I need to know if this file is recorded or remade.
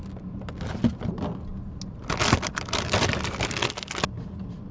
recorded